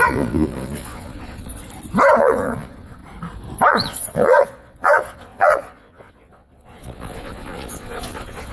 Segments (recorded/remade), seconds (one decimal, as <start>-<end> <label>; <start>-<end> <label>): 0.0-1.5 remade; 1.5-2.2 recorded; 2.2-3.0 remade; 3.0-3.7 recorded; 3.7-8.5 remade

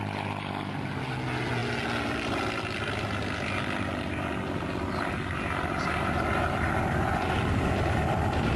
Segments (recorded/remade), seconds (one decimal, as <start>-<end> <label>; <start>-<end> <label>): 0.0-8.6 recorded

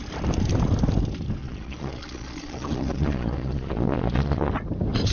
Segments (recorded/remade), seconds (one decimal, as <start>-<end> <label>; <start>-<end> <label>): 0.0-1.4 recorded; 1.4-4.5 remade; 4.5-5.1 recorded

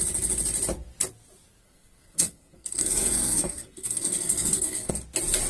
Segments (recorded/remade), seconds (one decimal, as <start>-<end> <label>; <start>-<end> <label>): 0.0-1.6 recorded; 1.6-4.9 remade; 4.9-5.5 recorded

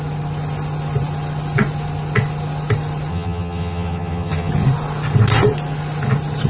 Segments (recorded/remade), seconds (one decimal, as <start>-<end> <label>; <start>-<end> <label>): 0.0-3.1 recorded; 3.1-4.5 remade; 4.5-6.5 recorded